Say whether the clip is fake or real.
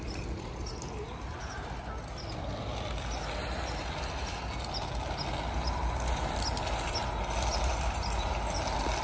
real